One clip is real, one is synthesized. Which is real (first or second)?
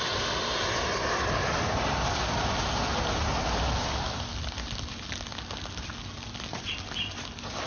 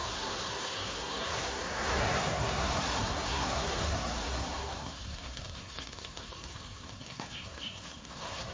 first